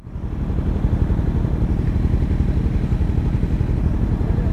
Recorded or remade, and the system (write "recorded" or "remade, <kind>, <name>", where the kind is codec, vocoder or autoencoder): recorded